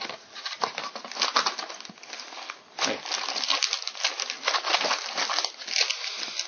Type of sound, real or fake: real